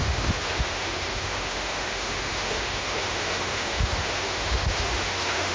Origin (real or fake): fake